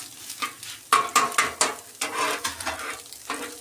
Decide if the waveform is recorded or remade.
recorded